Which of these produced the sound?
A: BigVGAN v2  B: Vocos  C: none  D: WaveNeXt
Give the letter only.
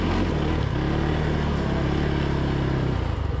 C